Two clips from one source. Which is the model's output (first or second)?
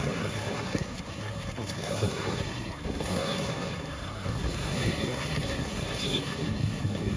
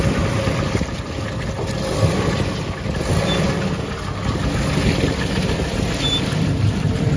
first